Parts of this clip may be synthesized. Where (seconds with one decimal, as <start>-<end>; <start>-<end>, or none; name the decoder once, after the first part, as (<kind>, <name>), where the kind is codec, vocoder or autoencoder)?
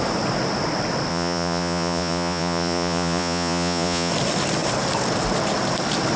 1.1-4.1 (vocoder, Vocos)